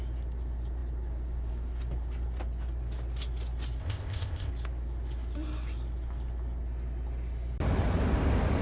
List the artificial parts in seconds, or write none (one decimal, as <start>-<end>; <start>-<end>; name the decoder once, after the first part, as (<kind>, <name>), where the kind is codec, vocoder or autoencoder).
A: 3.8-4.5 (codec, ZipCodec)